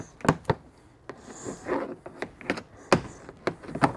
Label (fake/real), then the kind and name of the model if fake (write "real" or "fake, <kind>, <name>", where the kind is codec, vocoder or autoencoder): real